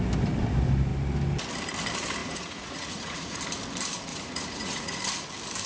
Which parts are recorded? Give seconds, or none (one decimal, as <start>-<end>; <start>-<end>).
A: 0.0-2.2; 3.4-4.1; 5.0-5.7